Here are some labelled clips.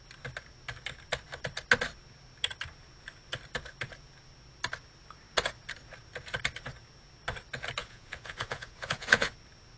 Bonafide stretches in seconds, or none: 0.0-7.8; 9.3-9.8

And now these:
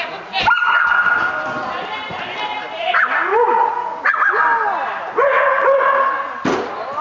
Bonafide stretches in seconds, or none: 0.0-7.0

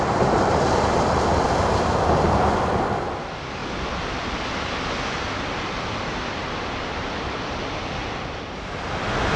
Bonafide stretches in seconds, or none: 3.6-4.2

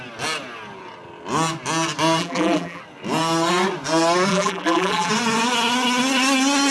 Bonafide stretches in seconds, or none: 0.0-2.2; 2.8-4.3; 5.1-6.7

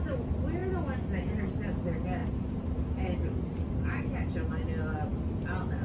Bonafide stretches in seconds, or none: 0.0-5.8